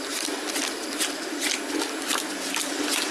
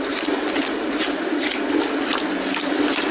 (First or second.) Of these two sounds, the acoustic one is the second